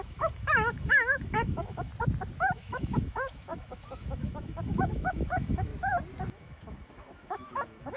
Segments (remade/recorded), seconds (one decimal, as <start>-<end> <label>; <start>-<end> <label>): 0.0-1.9 remade; 1.9-2.4 recorded; 2.4-5.7 remade; 5.7-6.3 recorded; 6.3-8.0 remade